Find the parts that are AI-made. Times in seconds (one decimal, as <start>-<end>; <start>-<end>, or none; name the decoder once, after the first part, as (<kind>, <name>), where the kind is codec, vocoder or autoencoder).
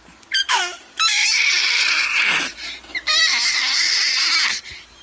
0.0-1.2 (vocoder, BigVGAN v2); 1.8-2.9; 4.6-5.0